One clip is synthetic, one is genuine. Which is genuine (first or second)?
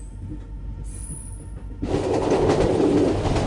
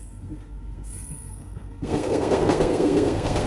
first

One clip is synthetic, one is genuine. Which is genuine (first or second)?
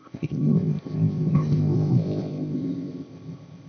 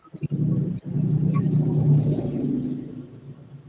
second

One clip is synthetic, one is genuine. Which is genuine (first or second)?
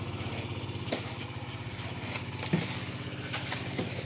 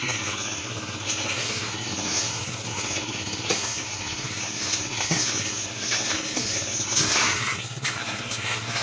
first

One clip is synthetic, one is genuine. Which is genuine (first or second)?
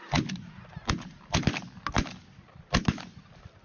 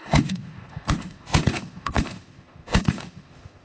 first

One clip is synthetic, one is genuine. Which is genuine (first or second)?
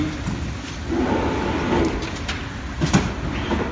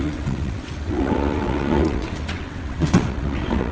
first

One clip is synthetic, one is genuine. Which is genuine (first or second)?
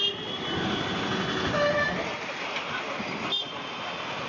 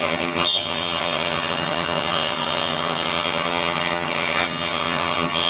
first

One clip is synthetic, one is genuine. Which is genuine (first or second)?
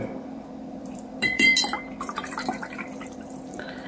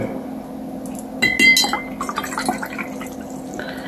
second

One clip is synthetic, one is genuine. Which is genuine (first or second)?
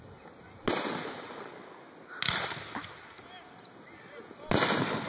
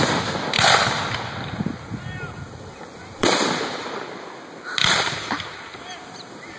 first